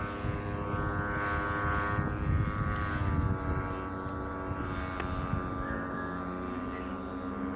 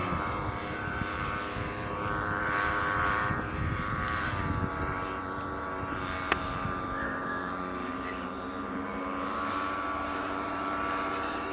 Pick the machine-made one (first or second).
second